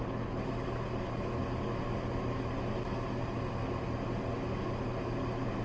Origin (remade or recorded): recorded